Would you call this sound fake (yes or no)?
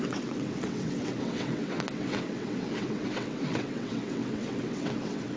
yes